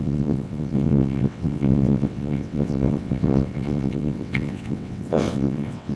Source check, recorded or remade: remade